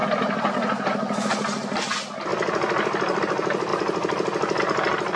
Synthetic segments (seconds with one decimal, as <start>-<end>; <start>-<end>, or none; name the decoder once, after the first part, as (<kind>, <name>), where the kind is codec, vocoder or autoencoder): none